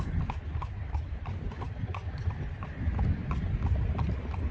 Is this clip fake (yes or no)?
no